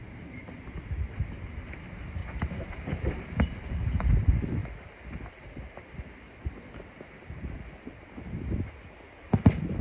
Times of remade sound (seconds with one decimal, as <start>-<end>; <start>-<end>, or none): 2.2-4.1